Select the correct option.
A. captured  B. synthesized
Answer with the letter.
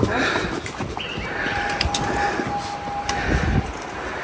A